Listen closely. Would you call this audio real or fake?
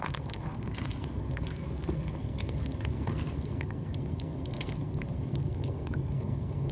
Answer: fake